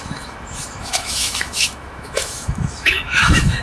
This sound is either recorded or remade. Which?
remade